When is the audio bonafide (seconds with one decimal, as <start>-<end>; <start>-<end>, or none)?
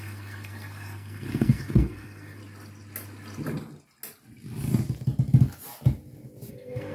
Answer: 2.4-6.5